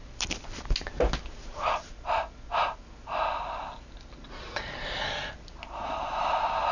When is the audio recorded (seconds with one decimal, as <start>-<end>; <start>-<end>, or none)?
0.0-6.7